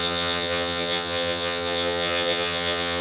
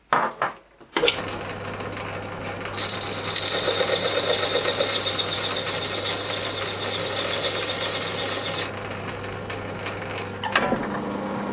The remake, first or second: first